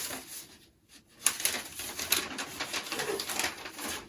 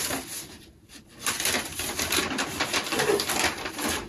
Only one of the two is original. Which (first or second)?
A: first